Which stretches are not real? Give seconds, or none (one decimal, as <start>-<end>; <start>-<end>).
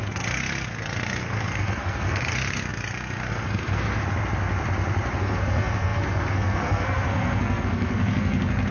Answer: 0.0-4.0; 5.2-8.7